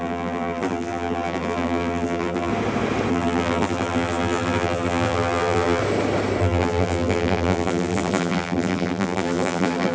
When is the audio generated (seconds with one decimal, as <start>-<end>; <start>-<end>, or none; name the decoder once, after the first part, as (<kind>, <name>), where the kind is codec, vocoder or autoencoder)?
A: 0.0-2.5 (vocoder, BigVGAN v2); 3.1-5.8; 6.4-9.9